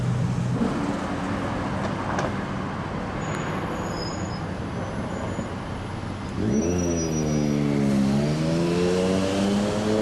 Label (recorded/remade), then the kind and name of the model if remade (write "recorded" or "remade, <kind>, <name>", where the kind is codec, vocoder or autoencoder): recorded